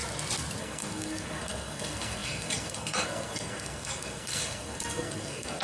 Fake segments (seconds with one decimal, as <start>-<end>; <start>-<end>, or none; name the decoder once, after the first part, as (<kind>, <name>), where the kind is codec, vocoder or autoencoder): 0.6-5.6 (codec, SNAC)